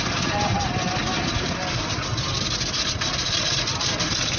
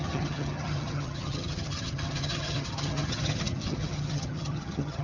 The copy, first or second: second